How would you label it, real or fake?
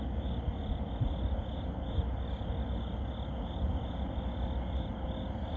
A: real